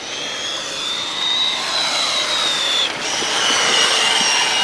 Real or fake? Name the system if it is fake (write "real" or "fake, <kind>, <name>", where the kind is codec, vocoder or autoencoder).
real